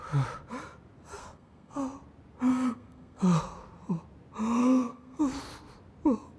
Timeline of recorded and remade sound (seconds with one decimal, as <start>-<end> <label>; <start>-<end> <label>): 0.0-1.2 recorded; 1.2-1.8 remade; 1.8-2.5 recorded; 2.5-3.2 remade; 3.2-4.6 recorded; 4.6-5.2 remade; 5.2-6.4 recorded

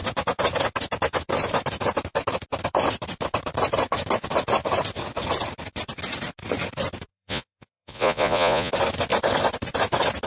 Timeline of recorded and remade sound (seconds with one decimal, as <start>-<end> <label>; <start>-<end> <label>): 0.0-7.1 recorded; 7.1-8.7 remade; 8.7-10.3 recorded

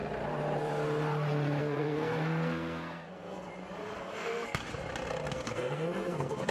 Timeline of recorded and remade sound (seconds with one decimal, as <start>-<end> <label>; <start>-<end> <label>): 0.0-1.6 recorded; 1.6-3.5 remade; 3.5-4.0 recorded; 4.0-4.6 remade; 4.6-5.3 recorded; 5.3-6.5 remade

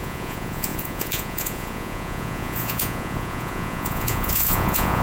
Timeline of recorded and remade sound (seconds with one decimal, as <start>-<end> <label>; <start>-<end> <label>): 0.0-5.0 remade

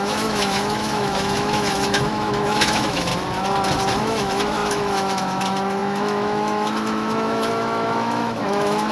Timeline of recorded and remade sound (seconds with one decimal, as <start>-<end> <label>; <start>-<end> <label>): 0.0-3.1 remade; 3.1-4.0 recorded; 4.0-8.9 remade

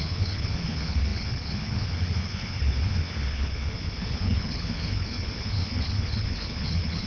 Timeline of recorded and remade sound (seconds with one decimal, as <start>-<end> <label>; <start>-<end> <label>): 0.0-7.1 remade